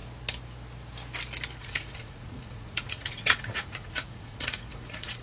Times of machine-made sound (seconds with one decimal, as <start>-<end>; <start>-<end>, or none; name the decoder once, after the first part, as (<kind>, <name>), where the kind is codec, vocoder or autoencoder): 1.6-5.2 (vocoder, Vocos)